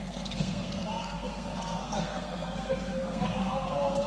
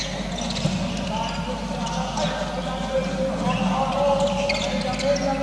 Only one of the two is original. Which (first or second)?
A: second